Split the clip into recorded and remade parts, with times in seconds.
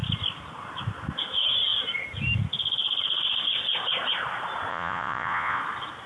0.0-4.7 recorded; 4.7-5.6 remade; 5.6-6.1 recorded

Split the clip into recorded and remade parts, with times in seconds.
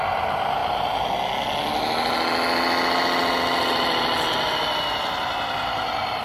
0.0-6.2 recorded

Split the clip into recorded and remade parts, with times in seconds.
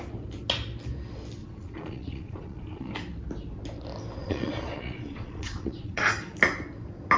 0.0-1.4 recorded; 1.4-2.9 remade; 2.9-4.2 recorded; 4.2-6.0 remade; 6.0-7.2 recorded